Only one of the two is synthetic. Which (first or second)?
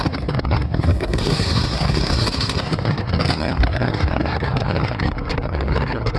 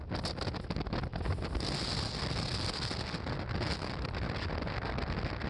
first